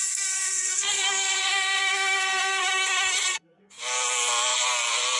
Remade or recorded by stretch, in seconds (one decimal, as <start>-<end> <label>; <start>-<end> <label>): 0.0-2.6 remade; 2.6-3.3 recorded; 3.3-3.8 remade; 3.8-5.2 recorded

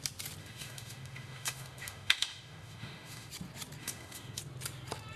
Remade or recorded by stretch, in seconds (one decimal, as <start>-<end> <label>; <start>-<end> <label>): 0.0-0.4 recorded; 0.4-3.3 remade; 3.3-3.8 recorded; 3.8-4.4 remade; 4.4-5.2 recorded

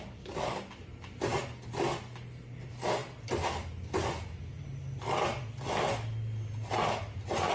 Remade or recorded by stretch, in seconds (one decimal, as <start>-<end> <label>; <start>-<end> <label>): 0.0-7.5 recorded

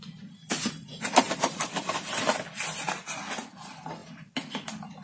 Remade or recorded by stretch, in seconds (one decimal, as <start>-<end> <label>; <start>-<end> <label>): 0.0-5.0 recorded

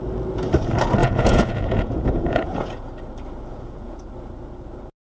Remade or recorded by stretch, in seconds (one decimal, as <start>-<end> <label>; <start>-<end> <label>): 0.0-1.0 recorded; 1.0-2.9 remade; 2.9-3.5 recorded; 3.5-4.1 remade; 4.1-5.1 recorded

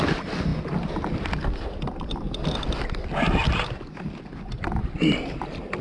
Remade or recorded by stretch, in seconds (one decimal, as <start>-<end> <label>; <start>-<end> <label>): 0.0-5.8 recorded

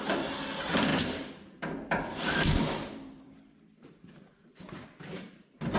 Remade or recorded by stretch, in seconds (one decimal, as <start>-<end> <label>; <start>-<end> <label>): 0.0-0.9 recorded; 0.9-1.6 remade; 1.6-2.1 recorded; 2.1-5.8 remade